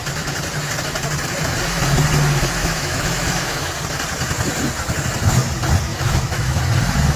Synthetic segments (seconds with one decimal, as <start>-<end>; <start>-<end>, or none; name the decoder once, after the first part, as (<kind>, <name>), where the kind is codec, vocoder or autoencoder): 2.6-3.7 (autoencoder, DAC-VAE); 5.9-6.6